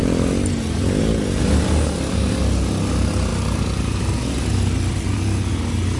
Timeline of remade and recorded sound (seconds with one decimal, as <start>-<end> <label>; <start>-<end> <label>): 0.0-6.0 recorded